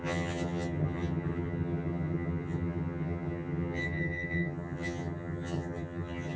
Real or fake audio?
fake